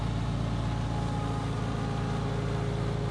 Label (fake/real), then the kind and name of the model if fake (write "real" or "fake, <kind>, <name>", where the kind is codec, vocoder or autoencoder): real